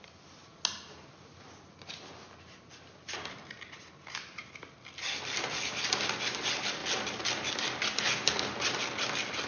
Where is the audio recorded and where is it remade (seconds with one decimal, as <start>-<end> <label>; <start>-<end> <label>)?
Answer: 0.0-9.5 recorded